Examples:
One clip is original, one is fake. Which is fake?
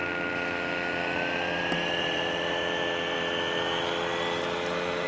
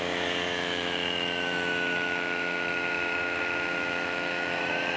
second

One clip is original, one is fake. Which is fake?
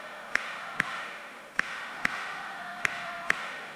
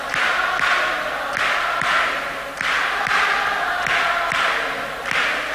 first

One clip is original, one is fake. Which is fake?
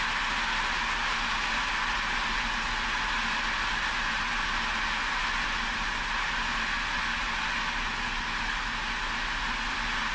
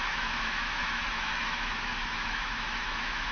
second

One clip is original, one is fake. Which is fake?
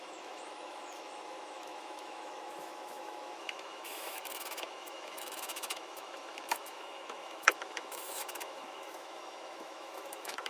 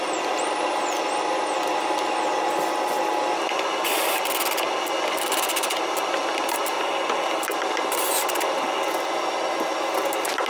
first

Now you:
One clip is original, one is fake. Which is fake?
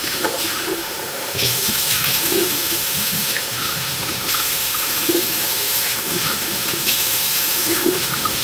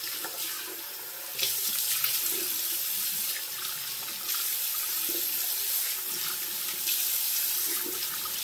first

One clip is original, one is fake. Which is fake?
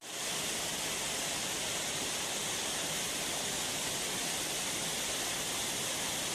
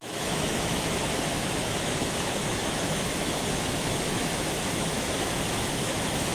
second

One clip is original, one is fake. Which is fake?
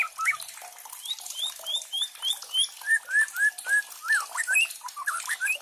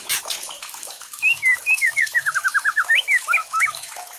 second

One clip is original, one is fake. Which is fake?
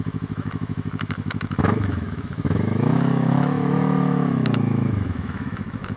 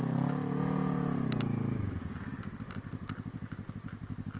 first